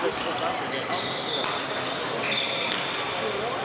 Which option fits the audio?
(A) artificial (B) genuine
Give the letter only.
B